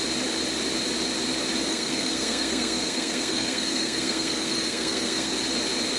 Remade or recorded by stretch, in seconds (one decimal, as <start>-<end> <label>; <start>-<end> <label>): 0.0-1.7 recorded; 1.7-5.3 remade; 5.3-6.0 recorded